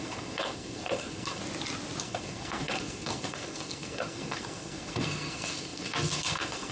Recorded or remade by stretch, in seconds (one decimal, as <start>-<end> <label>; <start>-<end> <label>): 0.0-1.4 remade; 1.4-2.0 recorded; 2.0-6.7 remade